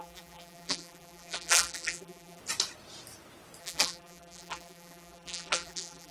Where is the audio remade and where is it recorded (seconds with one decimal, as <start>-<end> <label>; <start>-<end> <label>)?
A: 0.0-2.4 remade; 2.4-3.6 recorded; 3.6-6.1 remade